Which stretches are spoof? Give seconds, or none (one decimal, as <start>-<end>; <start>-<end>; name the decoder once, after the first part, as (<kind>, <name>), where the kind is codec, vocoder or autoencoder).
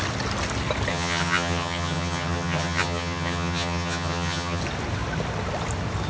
0.9-4.6 (vocoder, HiFi-GAN)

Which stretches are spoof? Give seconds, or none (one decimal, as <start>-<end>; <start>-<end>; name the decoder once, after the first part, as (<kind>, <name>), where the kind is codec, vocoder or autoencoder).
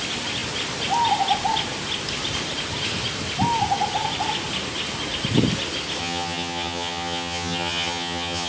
6.0-8.5 (vocoder, HiFi-GAN)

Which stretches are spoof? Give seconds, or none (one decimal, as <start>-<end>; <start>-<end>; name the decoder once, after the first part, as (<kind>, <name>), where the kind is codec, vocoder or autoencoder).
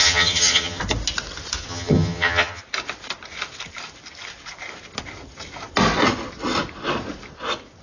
0.0-0.8 (vocoder, HiFi-GAN); 1.7-2.6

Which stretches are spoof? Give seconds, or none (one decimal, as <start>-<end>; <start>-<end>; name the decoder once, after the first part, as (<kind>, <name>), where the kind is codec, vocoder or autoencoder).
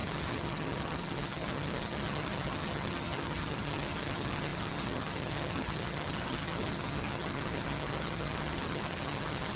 0.0-9.6 (vocoder, HiFi-GAN)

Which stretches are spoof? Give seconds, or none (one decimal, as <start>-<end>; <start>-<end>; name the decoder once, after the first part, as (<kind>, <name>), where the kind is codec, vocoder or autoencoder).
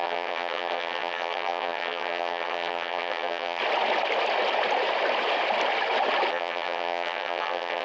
0.0-3.6 (vocoder, HiFi-GAN); 6.3-7.8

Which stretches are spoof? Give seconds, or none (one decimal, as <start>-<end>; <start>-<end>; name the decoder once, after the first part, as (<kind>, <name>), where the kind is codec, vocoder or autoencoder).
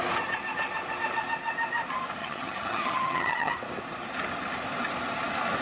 2.2-3.5 (vocoder, HiFi-GAN)